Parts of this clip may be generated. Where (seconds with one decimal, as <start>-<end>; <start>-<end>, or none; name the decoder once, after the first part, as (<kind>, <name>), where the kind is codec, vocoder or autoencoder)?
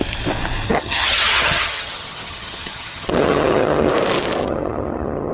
0.7-3.9 (vocoder, HiFi-GAN); 4.4-5.3